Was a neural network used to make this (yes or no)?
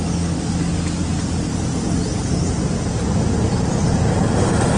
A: no